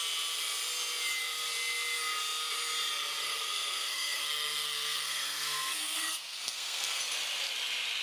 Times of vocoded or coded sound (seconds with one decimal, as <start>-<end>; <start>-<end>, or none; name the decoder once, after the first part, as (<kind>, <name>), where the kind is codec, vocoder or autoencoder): 3.2-7.0 (codec, SNAC)

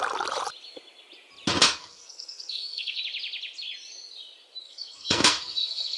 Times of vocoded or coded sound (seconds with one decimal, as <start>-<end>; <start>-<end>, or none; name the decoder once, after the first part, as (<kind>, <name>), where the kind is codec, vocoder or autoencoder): 1.6-3.0 (codec, SNAC); 4.6-6.0